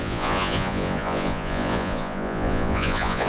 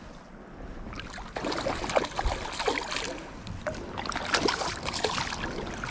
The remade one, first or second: first